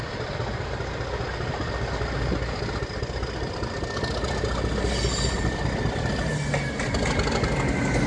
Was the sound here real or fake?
real